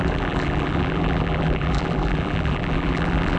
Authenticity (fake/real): fake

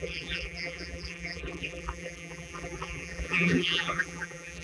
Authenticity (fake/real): fake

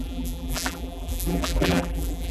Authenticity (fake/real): fake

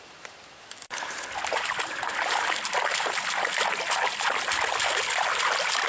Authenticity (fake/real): real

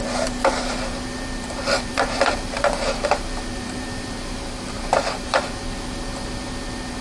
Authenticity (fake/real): fake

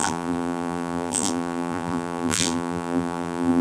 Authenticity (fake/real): fake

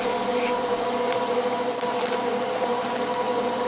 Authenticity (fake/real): fake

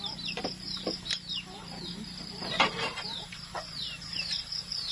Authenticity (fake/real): fake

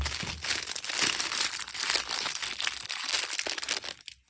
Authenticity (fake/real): real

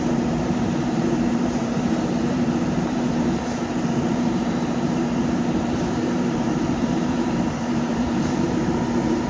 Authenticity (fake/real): fake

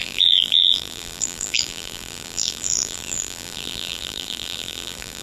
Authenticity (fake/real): fake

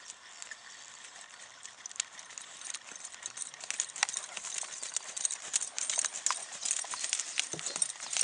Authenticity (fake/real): real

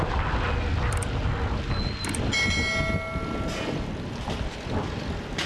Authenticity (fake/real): real